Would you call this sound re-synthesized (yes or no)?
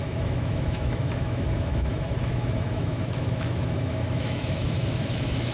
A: yes